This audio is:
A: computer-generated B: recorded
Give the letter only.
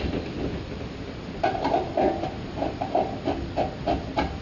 A